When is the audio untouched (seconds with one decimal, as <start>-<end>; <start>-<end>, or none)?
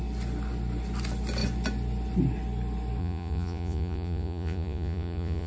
0.0-3.0